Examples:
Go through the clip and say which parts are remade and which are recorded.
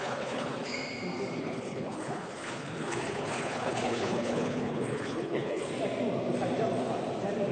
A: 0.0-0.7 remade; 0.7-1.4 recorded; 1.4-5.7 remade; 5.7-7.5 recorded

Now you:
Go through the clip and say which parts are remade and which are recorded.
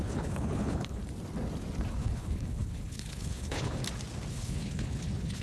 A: 0.0-1.0 remade; 1.0-1.9 recorded; 1.9-3.8 remade; 3.8-4.3 recorded; 4.3-5.4 remade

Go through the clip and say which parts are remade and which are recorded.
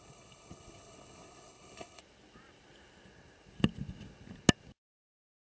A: 0.0-2.0 remade; 2.0-5.6 recorded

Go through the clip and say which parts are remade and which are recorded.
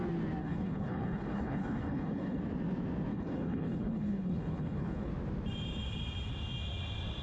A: 0.0-0.4 recorded; 0.4-2.4 remade; 2.4-3.1 recorded; 3.1-5.1 remade; 5.1-7.2 recorded